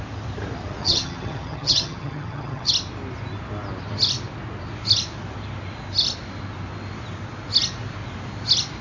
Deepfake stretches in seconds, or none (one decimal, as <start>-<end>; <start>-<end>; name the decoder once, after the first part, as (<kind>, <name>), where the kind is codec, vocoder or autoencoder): 0.8-2.7 (vocoder, HiFi-GAN)